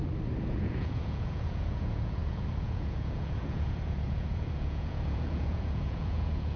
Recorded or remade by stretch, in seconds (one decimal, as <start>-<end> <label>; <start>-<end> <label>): 0.0-0.5 recorded; 0.5-6.6 remade